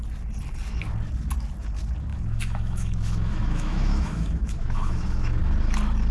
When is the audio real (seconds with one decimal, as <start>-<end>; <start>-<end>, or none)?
0.0-2.1; 5.4-6.1